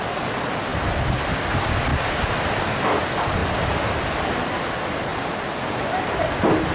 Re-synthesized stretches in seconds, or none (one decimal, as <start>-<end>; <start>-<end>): 0.7-1.3; 1.9-2.6; 5.1-6.0